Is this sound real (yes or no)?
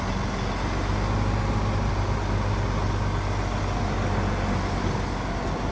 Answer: yes